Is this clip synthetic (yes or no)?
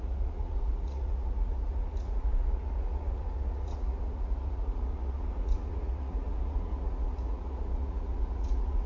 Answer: yes